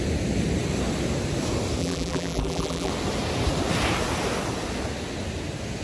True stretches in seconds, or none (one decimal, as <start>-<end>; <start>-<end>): 0.0-1.8; 2.9-5.8